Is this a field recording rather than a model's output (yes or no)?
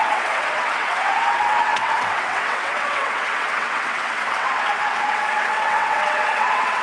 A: no